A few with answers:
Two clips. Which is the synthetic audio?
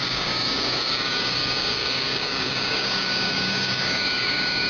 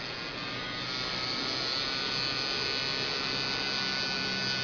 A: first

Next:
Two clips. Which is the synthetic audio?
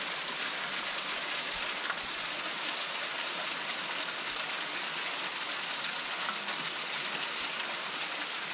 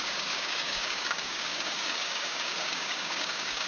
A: second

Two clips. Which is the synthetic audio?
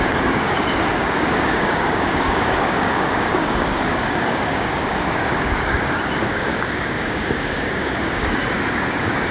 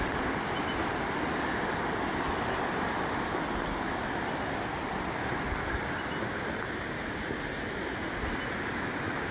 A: first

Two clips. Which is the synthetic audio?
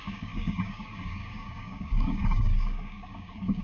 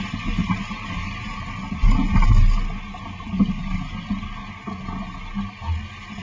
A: first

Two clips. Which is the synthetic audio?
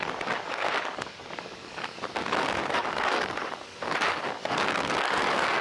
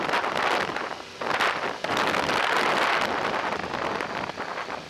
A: first